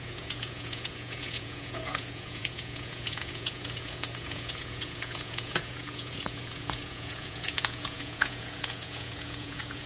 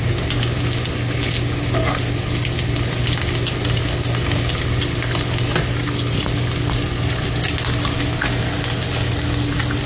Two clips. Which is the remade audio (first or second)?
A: first